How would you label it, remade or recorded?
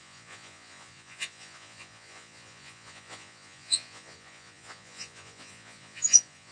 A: remade